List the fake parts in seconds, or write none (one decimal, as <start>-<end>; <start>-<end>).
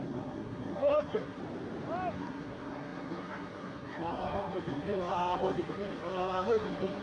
0.0-1.4; 2.1-7.0